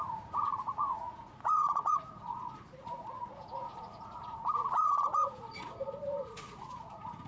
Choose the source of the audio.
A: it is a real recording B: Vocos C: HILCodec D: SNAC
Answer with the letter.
B